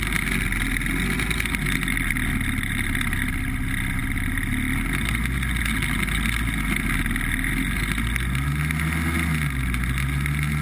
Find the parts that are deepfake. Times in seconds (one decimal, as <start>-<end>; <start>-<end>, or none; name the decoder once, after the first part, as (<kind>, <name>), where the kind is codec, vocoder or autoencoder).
none